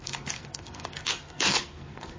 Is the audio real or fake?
fake